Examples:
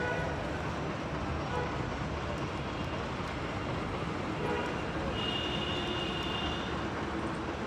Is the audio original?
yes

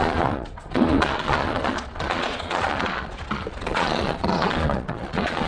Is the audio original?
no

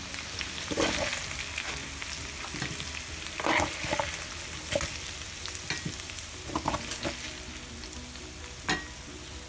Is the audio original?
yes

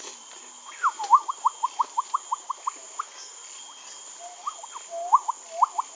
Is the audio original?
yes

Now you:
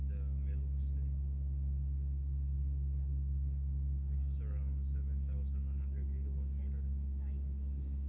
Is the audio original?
no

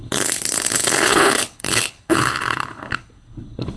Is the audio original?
no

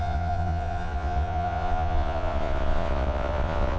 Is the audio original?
no